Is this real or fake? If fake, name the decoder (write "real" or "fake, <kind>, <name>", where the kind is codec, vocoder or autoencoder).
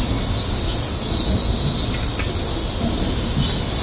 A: real